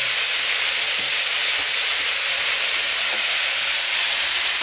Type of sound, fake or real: real